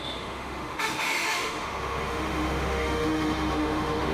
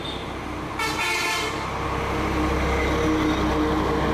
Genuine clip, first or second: second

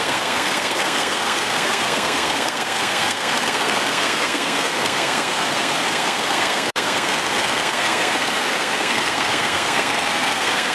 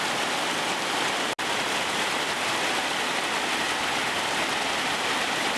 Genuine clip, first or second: second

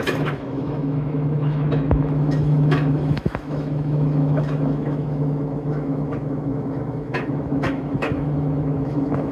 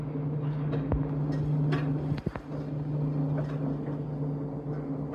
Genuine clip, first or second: second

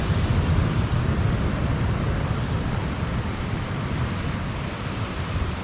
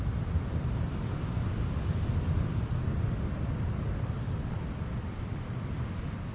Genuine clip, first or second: second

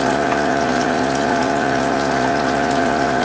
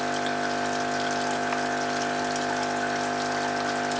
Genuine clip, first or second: second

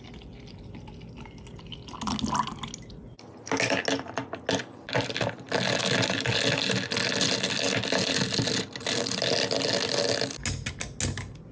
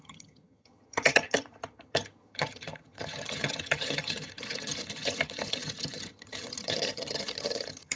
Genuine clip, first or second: first